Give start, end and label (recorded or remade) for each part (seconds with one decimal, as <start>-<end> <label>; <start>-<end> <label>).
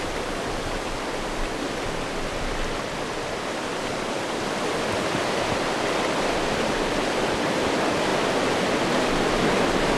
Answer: 0.0-3.7 recorded; 3.7-7.6 remade; 7.6-10.0 recorded